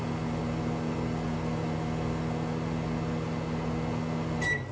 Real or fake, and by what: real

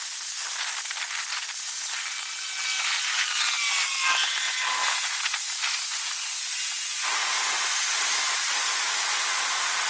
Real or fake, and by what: real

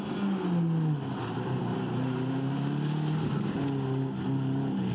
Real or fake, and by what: real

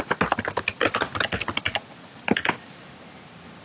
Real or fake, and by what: real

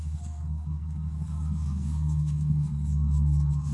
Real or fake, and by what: fake, codec, SNAC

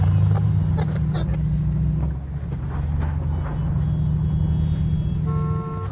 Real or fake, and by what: real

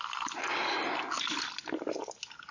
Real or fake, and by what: real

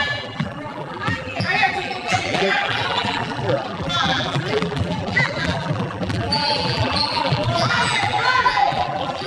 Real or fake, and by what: fake, vocoder, BigVGAN v2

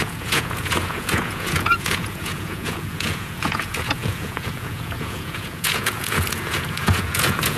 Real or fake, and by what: fake, vocoder, Vocos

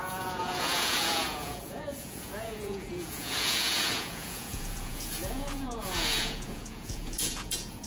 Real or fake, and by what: fake, vocoder, Vocos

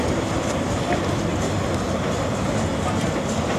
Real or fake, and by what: real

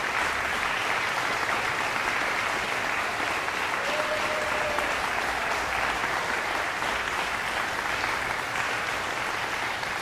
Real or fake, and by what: real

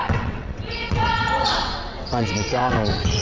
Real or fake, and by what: fake, vocoder, WaveNeXt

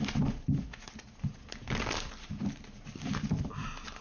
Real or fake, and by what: real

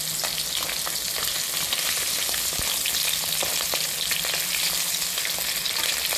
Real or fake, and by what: real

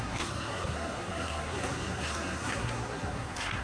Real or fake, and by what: fake, codec, SNAC